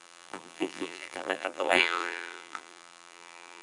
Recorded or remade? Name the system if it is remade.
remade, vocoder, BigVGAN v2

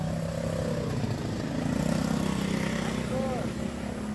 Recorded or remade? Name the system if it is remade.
recorded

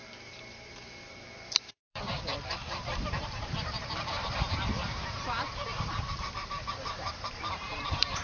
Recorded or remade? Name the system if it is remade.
remade, vocoder, BigVGAN v2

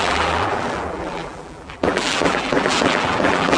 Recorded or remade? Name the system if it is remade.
remade, vocoder, BigVGAN v2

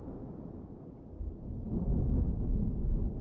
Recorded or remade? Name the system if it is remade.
recorded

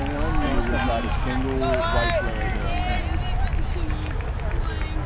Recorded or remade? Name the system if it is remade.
recorded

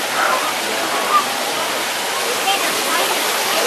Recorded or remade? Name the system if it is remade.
remade, vocoder, BigVGAN v2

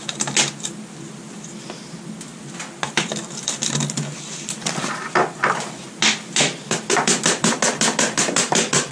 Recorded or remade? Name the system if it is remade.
recorded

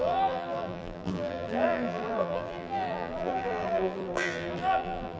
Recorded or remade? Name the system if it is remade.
remade, vocoder, BigVGAN v2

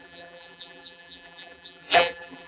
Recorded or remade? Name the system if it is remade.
remade, vocoder, BigVGAN v2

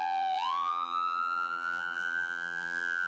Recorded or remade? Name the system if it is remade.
remade, vocoder, BigVGAN v2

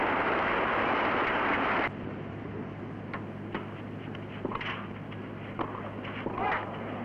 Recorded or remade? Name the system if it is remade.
recorded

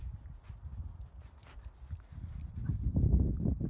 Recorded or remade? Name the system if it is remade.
remade, vocoder, BigVGAN v2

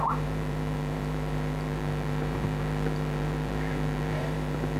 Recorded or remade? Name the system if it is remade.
remade, vocoder, BigVGAN v2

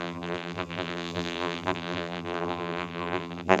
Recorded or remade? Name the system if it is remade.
remade, vocoder, BigVGAN v2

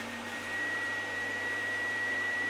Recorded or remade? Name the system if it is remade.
remade, vocoder, BigVGAN v2